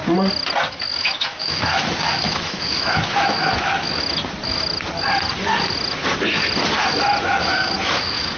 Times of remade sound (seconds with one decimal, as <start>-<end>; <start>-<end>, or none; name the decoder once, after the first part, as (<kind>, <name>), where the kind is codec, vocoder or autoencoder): 1.0-3.7 (autoencoder, DAC-VAE); 7.2-8.4